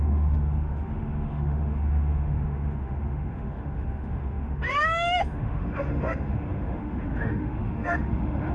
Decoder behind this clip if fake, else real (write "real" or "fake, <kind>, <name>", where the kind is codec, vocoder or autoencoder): fake, autoencoder, DAC-VAE